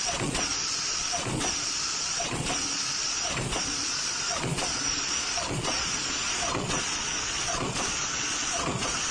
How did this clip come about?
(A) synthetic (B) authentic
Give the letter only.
A